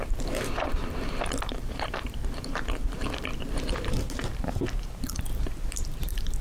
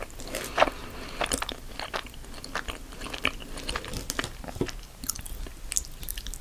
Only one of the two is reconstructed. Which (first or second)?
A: first